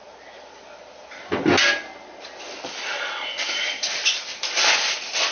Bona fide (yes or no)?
yes